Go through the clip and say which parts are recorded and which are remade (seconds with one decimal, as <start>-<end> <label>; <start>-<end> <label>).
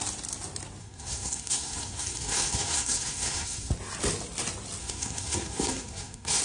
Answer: 0.0-0.8 recorded; 0.8-3.7 remade; 3.7-4.8 recorded; 4.8-6.4 remade